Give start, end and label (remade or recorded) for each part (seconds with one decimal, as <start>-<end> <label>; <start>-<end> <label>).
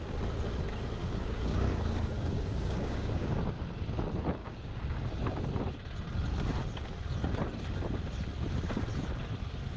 0.0-1.0 recorded; 1.0-3.4 remade; 3.4-4.4 recorded; 4.4-5.1 remade; 5.1-9.8 recorded